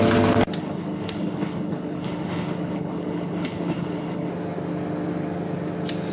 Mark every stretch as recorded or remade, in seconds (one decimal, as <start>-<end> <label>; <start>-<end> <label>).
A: 0.0-0.6 recorded; 0.6-4.3 remade; 4.3-6.1 recorded